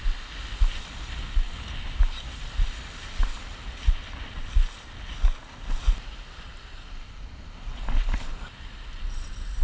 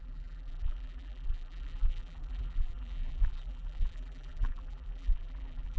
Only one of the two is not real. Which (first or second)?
second